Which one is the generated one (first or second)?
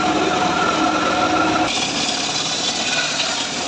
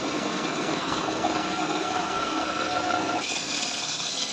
second